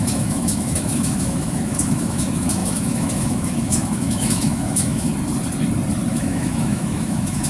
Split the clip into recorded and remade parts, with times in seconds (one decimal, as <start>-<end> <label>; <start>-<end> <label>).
0.0-5.1 remade; 5.1-6.1 recorded; 6.1-7.5 remade